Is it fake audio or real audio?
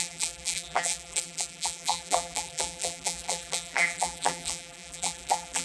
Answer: fake